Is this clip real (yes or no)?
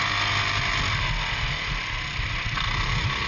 yes